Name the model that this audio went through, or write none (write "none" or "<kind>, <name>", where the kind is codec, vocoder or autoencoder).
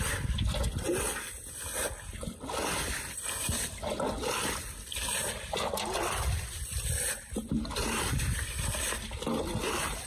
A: none